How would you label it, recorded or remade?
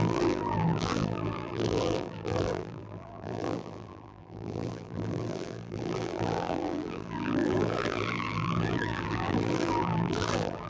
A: remade